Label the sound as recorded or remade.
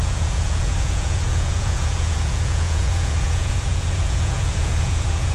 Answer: remade